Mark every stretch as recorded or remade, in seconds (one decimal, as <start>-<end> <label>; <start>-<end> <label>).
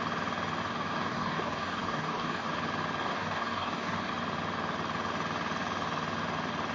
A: 0.0-0.6 recorded; 0.6-2.5 remade; 2.5-3.0 recorded; 3.0-4.1 remade; 4.1-6.7 recorded